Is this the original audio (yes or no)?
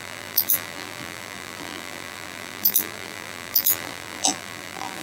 no